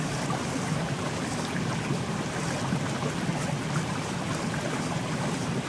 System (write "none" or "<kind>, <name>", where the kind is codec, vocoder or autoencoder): none